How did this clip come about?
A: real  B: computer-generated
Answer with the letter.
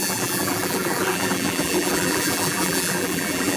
B